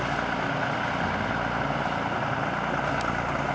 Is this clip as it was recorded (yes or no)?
yes